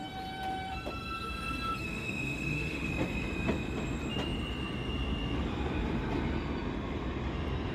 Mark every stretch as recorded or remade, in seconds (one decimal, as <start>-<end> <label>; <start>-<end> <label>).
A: 0.0-1.8 recorded; 1.8-2.9 remade; 2.9-7.7 recorded